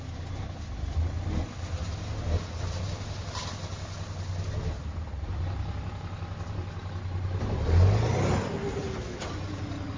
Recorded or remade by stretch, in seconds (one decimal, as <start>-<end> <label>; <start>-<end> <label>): 0.0-10.0 recorded